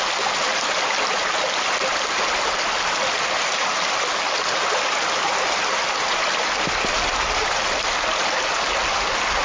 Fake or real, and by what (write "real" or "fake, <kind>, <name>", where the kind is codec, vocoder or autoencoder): real